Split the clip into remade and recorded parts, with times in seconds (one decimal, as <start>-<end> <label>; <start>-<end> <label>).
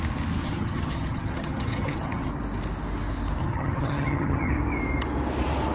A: 0.0-0.4 recorded; 0.4-2.3 remade; 2.3-3.4 recorded; 3.4-4.5 remade; 4.5-5.7 recorded